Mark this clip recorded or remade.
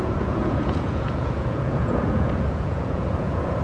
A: remade